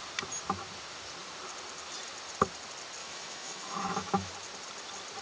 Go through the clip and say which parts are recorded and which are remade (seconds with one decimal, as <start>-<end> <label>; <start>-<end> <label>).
0.0-3.0 recorded; 3.0-4.3 remade; 4.3-5.2 recorded